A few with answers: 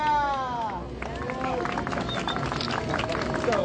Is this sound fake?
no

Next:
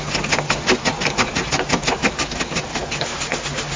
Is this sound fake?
no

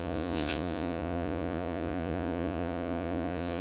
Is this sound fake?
yes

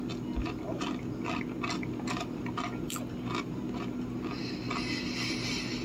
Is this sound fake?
no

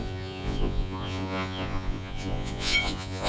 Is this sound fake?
yes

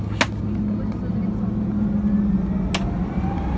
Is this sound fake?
no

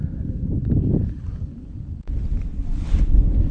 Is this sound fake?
no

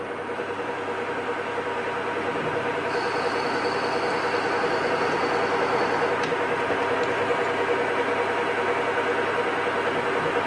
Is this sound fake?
no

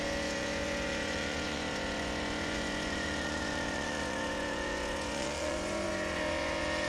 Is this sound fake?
yes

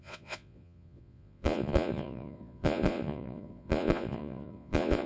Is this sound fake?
yes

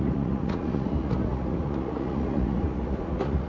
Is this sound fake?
yes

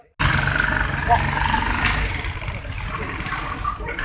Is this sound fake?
no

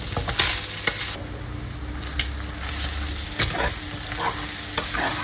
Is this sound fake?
no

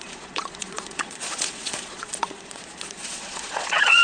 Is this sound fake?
yes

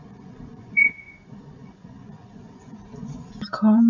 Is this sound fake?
yes